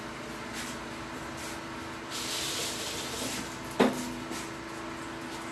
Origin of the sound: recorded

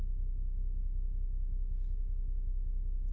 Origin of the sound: recorded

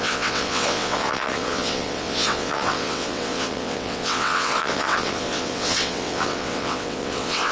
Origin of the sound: remade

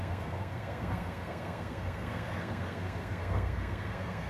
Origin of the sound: remade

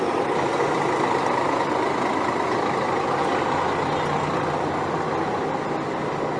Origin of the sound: recorded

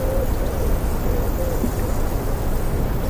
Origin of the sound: recorded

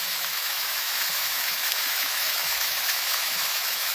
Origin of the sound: remade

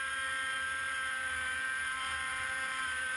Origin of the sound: remade